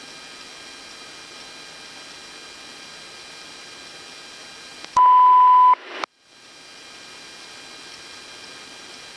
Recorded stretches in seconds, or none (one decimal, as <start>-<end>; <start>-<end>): 0.0-9.2